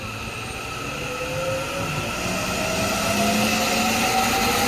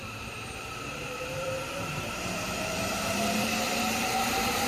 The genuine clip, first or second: first